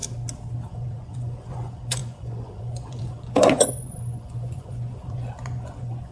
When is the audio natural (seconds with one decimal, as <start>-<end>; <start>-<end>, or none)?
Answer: 0.0-0.6